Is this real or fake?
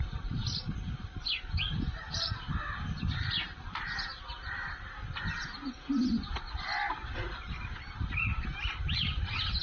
fake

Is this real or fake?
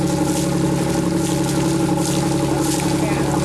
real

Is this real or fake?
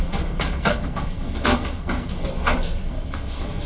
fake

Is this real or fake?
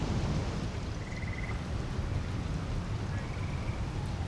real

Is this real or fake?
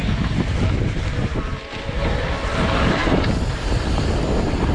real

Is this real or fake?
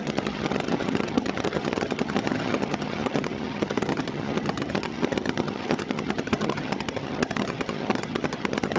fake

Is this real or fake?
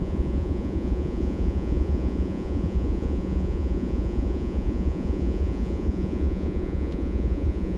fake